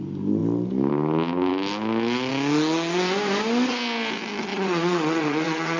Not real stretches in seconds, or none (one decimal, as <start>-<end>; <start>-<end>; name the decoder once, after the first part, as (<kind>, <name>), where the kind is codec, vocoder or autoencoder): 4.5-5.8 (vocoder, WaveNeXt)